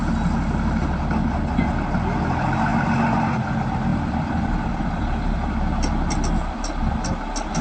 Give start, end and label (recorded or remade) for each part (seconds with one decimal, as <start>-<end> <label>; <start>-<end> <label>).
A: 0.0-2.7 recorded; 2.7-3.5 remade; 3.5-3.9 recorded; 3.9-5.5 remade; 5.5-7.6 recorded